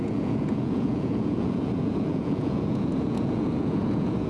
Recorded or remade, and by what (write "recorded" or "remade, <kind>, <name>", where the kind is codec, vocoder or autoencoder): remade, vocoder, Vocos